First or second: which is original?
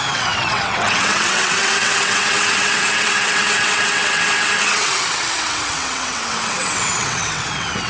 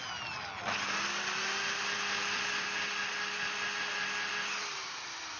second